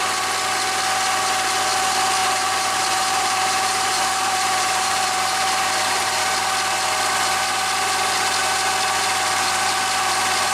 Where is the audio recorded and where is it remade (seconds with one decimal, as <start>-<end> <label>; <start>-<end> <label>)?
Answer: 0.0-2.2 recorded; 2.2-6.2 remade; 6.2-10.5 recorded